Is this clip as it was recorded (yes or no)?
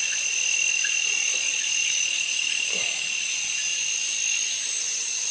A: yes